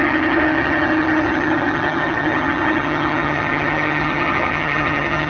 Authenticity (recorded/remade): remade